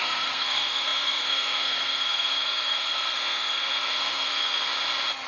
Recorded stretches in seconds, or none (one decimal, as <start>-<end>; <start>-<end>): 4.7-5.3